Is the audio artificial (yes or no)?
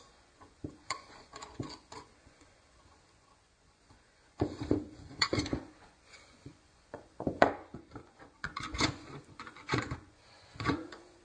yes